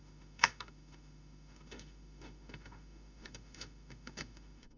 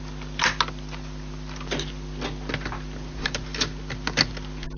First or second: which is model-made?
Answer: first